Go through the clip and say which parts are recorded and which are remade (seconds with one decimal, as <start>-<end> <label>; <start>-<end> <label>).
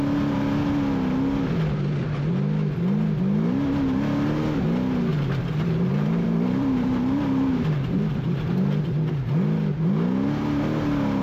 0.0-5.1 recorded; 5.1-9.1 remade; 9.1-11.2 recorded